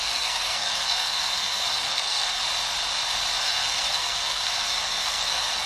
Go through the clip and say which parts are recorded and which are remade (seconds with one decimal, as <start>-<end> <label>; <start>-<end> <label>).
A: 0.0-2.4 remade; 2.4-3.4 recorded; 3.4-5.7 remade